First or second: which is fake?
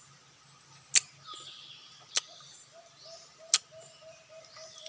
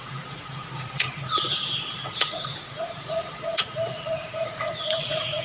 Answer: second